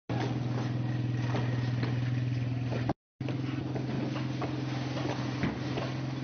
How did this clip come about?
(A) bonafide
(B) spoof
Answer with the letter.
A